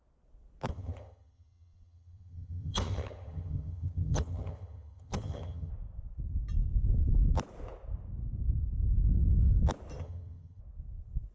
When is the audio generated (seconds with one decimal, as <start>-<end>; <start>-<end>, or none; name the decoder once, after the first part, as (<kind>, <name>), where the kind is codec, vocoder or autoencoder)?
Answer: 0.7-5.7 (vocoder, HiFi-GAN); 10.0-10.6